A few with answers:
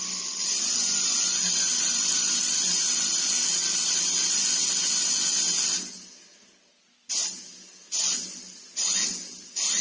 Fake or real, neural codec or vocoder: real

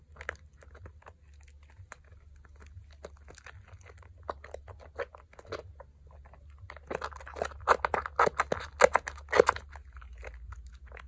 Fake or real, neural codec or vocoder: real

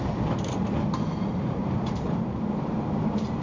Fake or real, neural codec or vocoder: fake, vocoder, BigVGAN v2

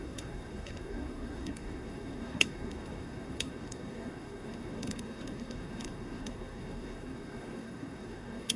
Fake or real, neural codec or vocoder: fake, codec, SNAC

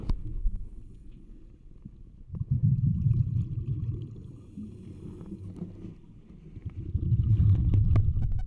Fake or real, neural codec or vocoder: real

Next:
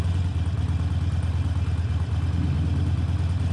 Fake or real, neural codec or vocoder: real